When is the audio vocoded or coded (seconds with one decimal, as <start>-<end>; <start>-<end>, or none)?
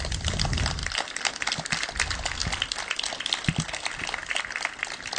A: none